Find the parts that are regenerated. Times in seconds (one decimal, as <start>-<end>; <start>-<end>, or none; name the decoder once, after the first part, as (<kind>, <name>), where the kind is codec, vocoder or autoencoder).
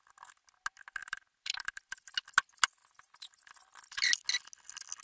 1.0-2.0 (vocoder, BigVGAN v2); 2.8-4.2